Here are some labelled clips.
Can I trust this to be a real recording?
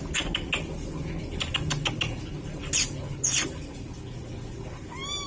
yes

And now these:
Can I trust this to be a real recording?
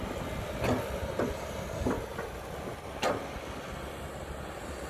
yes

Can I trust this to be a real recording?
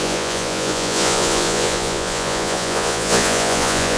no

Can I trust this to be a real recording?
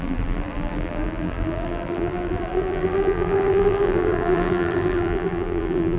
no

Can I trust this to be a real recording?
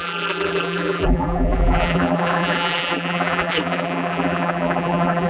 no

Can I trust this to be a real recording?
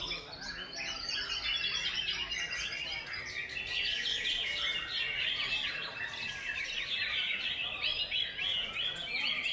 yes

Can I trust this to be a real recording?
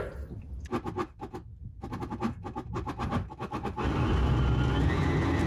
yes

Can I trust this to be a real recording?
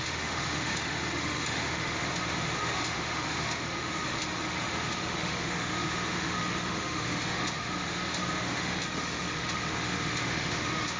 no